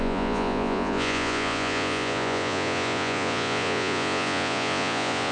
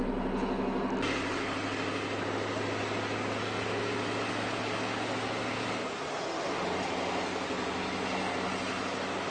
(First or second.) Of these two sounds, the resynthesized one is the first